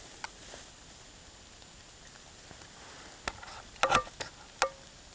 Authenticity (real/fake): real